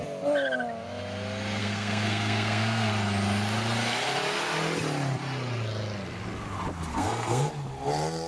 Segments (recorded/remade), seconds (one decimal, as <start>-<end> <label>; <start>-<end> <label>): 0.0-1.6 recorded; 1.6-2.9 remade; 2.9-6.9 recorded; 6.9-7.5 remade; 7.5-8.3 recorded